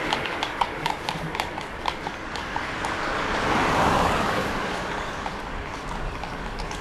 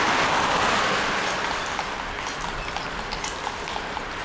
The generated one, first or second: first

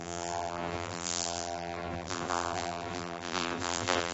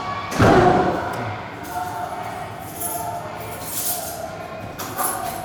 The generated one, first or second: first